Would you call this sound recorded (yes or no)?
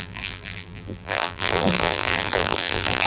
no